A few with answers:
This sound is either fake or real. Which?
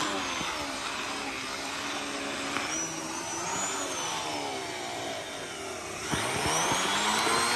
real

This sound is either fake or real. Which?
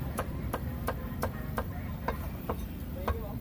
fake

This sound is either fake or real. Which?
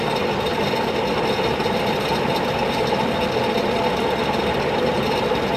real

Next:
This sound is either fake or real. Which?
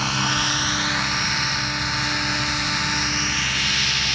real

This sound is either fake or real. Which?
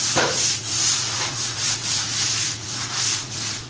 fake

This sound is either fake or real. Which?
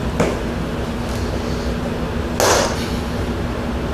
real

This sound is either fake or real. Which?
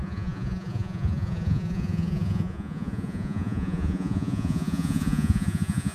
fake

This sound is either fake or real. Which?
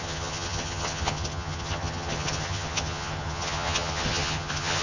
fake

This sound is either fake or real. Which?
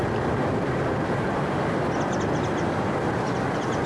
real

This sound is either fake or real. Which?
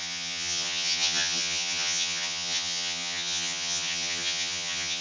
fake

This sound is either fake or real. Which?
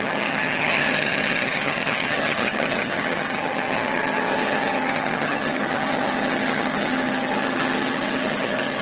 fake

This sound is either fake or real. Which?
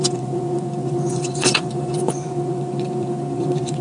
fake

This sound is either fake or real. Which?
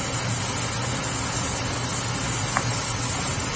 real